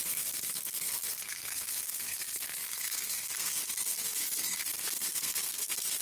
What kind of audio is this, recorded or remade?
remade